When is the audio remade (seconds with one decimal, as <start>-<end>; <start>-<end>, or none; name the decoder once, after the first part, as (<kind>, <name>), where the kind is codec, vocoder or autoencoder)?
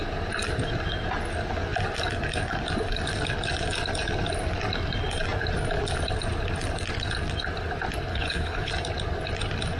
8.1-8.7 (codec, HILCodec)